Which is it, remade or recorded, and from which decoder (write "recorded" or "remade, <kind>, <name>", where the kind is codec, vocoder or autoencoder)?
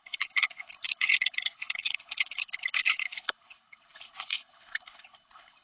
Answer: remade, codec, HILCodec